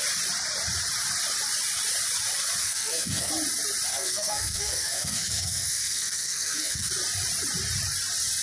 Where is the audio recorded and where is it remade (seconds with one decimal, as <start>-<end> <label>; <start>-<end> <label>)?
0.0-2.6 recorded; 2.6-3.3 remade; 3.3-3.9 recorded; 3.9-6.9 remade; 6.9-8.4 recorded

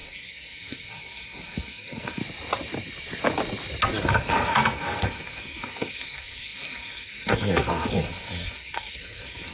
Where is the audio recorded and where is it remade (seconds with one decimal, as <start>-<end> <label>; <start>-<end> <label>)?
0.0-2.2 remade; 2.2-4.0 recorded; 4.0-9.5 remade